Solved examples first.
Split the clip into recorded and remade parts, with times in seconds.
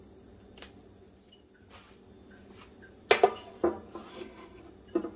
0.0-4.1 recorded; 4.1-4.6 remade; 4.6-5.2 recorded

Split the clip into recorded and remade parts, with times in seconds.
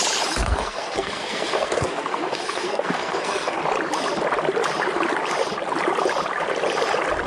0.0-0.4 recorded; 0.4-3.6 remade; 3.6-7.3 recorded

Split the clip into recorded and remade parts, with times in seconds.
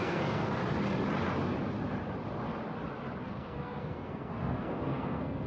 0.0-0.6 remade; 0.6-3.3 recorded; 3.3-5.5 remade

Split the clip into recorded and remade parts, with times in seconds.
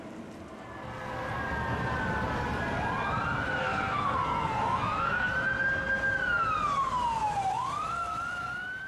0.0-3.6 recorded; 3.6-5.3 remade; 5.3-8.9 recorded